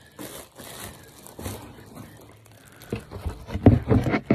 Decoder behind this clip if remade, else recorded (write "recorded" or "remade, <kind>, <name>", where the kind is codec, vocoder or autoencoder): recorded